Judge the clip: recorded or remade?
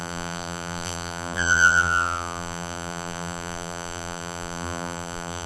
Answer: remade